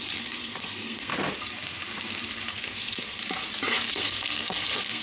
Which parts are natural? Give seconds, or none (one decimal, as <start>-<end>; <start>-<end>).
1.1-2.5; 3.2-3.9